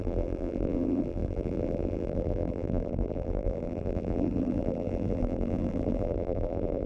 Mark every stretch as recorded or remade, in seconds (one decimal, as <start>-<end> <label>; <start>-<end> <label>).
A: 0.0-6.9 remade